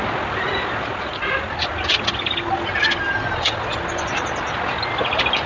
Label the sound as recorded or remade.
recorded